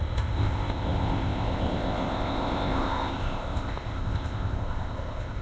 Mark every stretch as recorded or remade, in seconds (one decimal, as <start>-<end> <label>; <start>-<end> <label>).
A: 0.0-5.4 remade